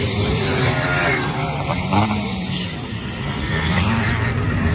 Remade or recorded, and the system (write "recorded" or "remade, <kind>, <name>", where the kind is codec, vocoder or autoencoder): remade, vocoder, BigVGAN v2